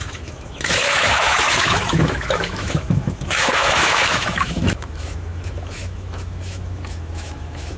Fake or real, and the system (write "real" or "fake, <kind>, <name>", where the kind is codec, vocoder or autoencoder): fake, autoencoder, DAC-VAE